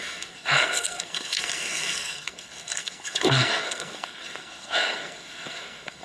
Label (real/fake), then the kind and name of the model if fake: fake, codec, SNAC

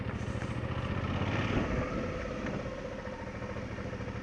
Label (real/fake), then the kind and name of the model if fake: real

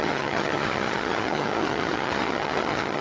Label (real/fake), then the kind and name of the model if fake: fake, vocoder, HiFi-GAN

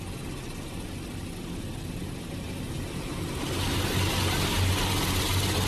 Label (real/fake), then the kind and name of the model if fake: real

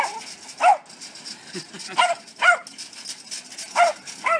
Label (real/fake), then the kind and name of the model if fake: real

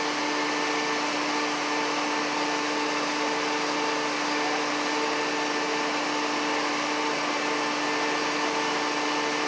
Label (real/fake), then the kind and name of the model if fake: real